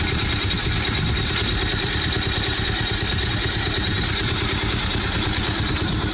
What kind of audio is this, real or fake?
fake